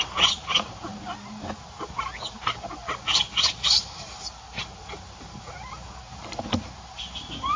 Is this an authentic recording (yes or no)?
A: yes